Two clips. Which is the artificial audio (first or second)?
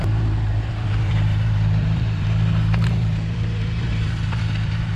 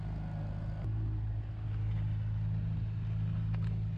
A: first